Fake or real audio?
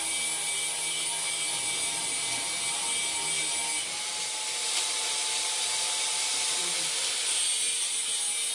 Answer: real